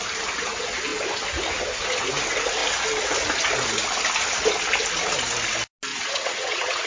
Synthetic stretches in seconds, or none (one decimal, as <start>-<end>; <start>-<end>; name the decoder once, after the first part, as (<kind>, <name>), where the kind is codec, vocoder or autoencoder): 5.9-6.9 (vocoder, WaveNeXt)